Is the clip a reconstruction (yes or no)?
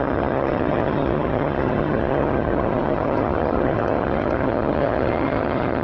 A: yes